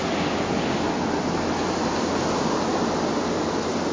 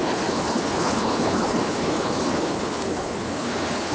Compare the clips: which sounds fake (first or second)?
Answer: second